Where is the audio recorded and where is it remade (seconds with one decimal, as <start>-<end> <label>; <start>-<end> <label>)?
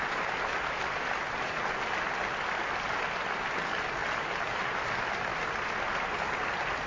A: 0.0-6.9 recorded